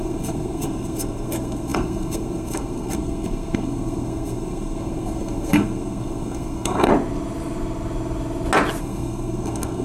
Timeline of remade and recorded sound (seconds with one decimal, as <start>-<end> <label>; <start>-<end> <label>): 0.0-6.9 remade; 6.9-8.8 recorded; 8.8-9.8 remade